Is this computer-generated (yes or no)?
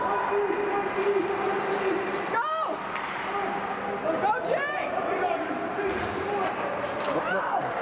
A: no